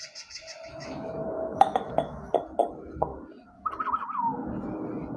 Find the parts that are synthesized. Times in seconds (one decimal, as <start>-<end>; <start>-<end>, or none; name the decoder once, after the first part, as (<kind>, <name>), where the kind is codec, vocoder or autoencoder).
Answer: 0.7-2.3 (autoencoder, DAC-VAE)